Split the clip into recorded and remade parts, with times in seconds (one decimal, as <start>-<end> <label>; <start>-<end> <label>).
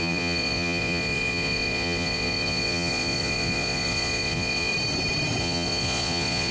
0.0-4.7 remade; 4.7-5.4 recorded; 5.4-6.5 remade